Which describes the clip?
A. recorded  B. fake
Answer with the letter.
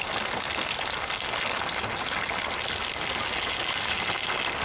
A